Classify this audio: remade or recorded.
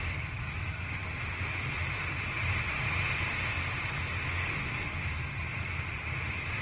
recorded